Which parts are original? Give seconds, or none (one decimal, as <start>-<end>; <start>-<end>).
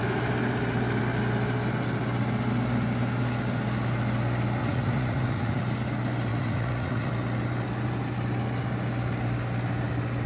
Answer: 0.0-4.6; 5.6-6.3; 7.1-10.3